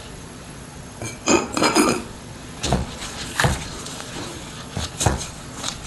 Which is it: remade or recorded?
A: remade